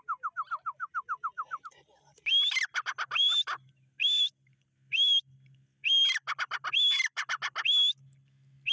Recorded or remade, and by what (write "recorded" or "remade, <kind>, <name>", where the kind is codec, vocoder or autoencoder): recorded